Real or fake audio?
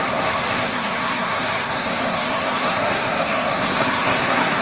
fake